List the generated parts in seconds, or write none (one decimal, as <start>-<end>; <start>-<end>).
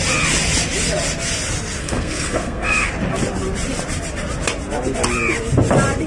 1.8-2.9